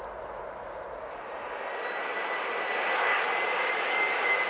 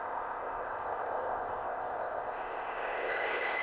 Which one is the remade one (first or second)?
second